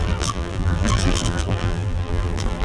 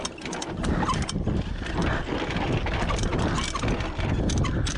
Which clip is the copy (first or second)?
first